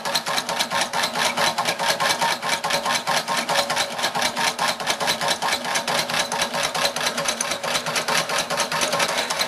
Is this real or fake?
real